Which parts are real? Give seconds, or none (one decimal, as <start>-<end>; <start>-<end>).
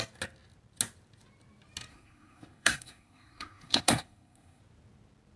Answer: 0.0-1.9; 4.6-5.4